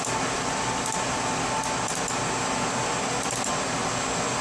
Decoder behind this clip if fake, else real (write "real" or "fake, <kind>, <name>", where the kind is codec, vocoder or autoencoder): real